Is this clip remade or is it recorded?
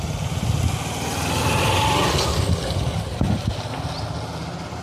recorded